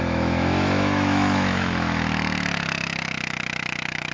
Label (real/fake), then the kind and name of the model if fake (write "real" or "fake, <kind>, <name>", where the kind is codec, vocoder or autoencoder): fake, autoencoder, DAC-VAE